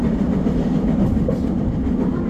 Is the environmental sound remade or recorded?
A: recorded